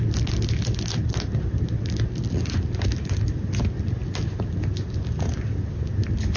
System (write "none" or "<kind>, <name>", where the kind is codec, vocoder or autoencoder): none